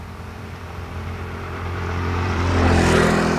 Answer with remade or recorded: remade